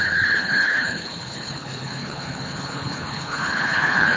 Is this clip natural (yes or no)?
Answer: no